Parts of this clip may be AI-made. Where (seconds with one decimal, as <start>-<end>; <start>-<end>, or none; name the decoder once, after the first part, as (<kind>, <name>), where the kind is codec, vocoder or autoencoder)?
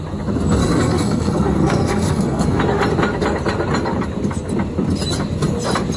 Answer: 0.6-2.6 (codec, SNAC)